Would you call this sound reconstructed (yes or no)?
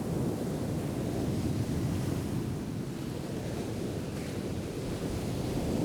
no